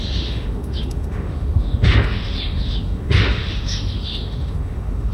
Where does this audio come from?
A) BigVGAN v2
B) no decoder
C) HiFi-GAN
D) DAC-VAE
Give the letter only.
D